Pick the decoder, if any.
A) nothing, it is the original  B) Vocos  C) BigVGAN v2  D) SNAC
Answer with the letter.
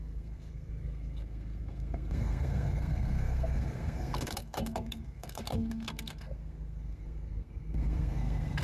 D